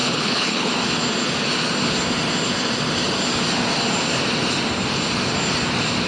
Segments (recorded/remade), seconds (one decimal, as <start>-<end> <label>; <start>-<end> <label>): 0.0-0.7 remade; 0.7-6.1 recorded